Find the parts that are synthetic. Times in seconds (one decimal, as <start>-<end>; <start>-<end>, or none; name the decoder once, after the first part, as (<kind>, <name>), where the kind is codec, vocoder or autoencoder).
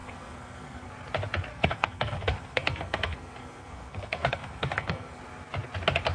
0.0-0.9 (codec, SNAC); 1.5-5.2